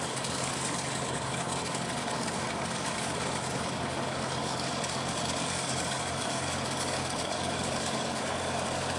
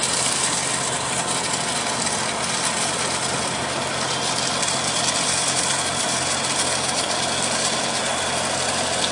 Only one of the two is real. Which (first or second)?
second